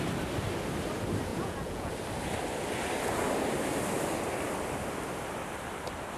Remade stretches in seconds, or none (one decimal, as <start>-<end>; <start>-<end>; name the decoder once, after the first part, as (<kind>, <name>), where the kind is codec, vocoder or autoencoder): 1.3-1.9 (vocoder, Vocos)